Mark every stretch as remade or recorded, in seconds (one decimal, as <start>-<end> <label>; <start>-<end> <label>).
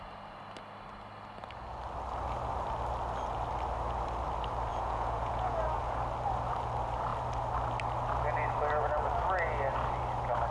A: 0.0-4.7 recorded; 4.7-6.0 remade; 6.0-10.5 recorded